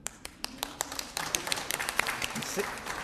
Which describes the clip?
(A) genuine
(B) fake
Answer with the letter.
B